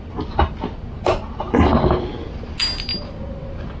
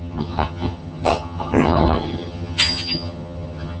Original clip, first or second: first